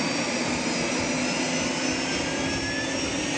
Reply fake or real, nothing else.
real